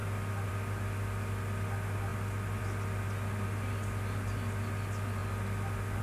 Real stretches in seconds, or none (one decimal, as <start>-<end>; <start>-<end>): 0.0-6.0